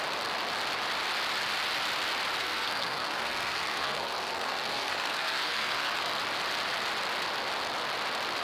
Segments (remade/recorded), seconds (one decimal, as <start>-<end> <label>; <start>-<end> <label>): 0.0-2.4 recorded; 2.4-6.2 remade; 6.2-8.4 recorded